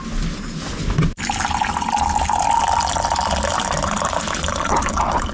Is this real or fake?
real